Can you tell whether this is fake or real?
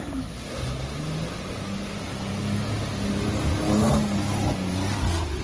real